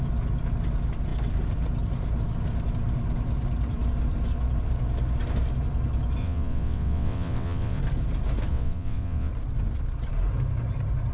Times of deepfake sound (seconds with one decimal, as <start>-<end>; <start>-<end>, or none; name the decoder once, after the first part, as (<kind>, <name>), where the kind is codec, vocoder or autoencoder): 6.2-7.8 (vocoder, WaveNeXt); 8.5-9.3